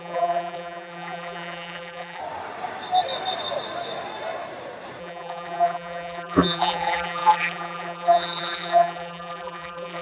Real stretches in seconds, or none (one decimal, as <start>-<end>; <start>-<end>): 2.2-5.0